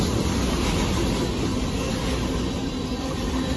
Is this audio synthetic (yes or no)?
no